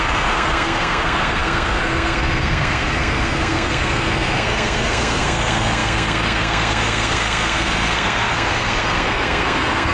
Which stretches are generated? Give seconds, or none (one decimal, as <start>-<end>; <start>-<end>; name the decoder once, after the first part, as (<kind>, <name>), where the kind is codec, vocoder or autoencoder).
0.0-9.9 (codec, SNAC)